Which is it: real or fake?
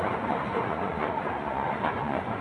fake